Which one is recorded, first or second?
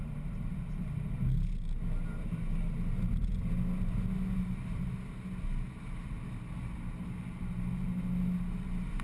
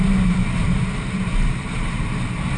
first